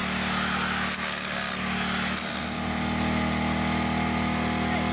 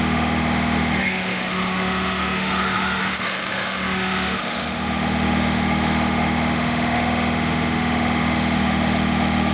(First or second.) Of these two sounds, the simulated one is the second